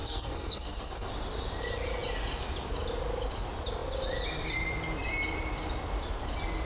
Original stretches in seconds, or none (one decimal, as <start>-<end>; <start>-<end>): 1.1-6.6